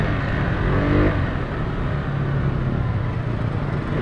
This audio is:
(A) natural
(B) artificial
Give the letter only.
A